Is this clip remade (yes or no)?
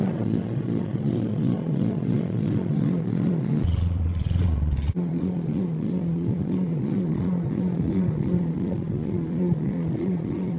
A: yes